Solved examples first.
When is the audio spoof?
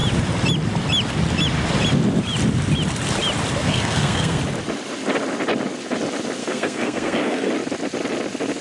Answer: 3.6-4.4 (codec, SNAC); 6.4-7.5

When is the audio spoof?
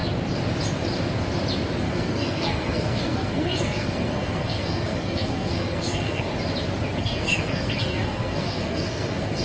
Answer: 1.8-6.3 (codec, SNAC); 7.0-9.4